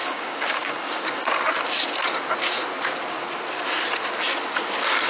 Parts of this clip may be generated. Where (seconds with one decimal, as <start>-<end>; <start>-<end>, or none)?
0.0-1.2